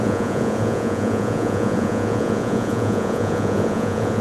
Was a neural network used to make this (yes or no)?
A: yes